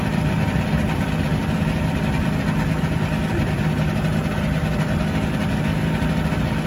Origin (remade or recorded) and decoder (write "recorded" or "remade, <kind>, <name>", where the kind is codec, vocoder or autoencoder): recorded